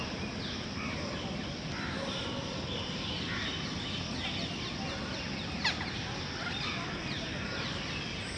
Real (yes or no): yes